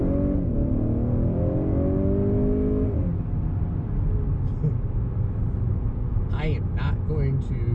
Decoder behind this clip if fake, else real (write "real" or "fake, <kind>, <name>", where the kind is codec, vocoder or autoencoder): real